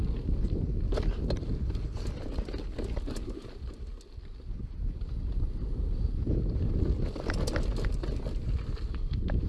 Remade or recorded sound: recorded